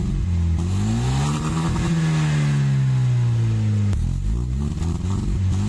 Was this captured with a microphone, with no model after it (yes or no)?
yes